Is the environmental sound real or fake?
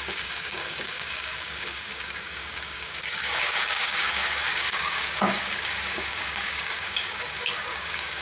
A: fake